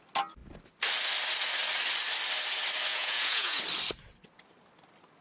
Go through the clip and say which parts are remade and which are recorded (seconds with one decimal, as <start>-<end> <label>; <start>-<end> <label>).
0.0-2.9 recorded; 2.9-3.6 remade; 3.6-5.2 recorded